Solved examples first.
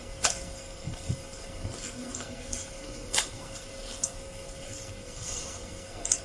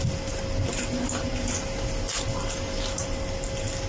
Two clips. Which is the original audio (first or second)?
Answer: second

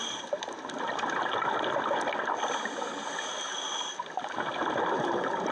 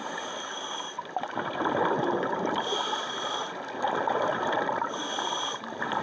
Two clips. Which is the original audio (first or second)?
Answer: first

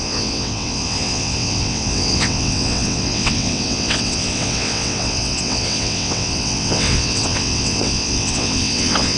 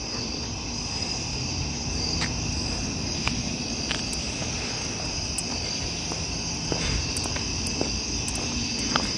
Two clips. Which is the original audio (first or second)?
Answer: second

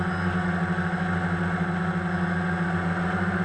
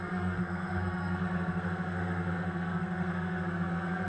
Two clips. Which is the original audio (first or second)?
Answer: first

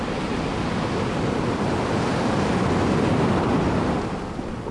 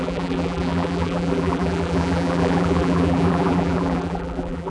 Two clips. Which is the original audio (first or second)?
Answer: first